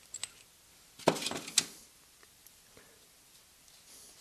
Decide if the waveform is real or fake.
real